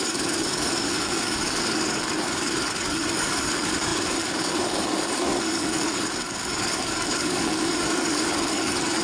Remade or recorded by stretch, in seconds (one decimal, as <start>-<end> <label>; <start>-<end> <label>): 0.0-9.0 remade